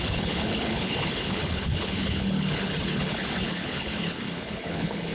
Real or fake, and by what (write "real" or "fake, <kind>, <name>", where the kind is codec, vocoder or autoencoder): fake, codec, HILCodec